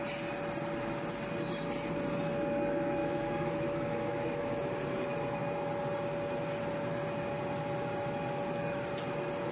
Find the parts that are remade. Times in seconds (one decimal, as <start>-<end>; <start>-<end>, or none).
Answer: 3.0-4.5